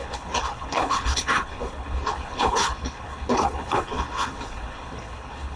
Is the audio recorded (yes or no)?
no